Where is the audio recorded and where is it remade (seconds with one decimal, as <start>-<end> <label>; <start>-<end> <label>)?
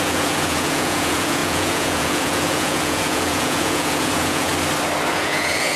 0.0-4.5 remade; 4.5-5.1 recorded; 5.1-5.8 remade